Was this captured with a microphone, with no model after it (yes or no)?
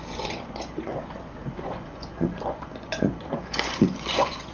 no